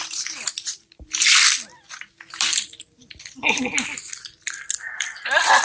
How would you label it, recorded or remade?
recorded